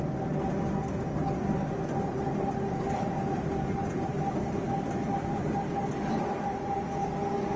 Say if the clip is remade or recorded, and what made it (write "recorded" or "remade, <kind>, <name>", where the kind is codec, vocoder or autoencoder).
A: recorded